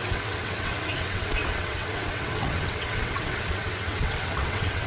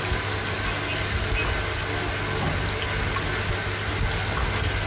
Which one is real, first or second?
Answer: second